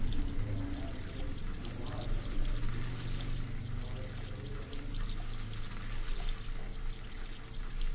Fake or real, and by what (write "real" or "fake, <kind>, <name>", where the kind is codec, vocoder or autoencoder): real